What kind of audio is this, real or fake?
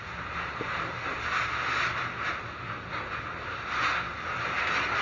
real